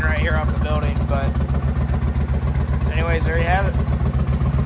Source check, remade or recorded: recorded